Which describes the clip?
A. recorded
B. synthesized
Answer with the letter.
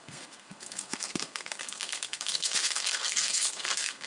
B